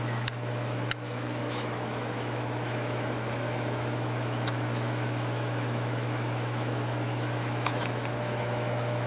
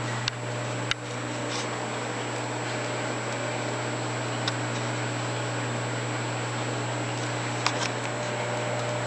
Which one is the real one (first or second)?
second